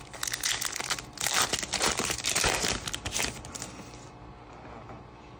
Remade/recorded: recorded